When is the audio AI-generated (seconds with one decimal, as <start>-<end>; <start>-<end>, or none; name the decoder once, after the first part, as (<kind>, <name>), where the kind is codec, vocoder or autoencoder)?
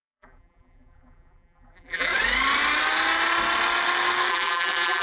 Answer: 0.0-2.1 (vocoder, BigVGAN v2); 4.3-5.0